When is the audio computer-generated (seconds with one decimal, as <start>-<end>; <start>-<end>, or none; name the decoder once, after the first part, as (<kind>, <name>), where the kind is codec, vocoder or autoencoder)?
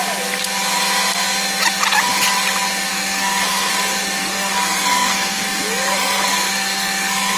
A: 2.9-3.7 (codec, SNAC); 4.2-7.4